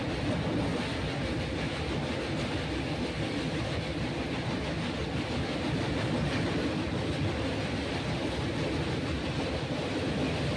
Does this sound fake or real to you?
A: real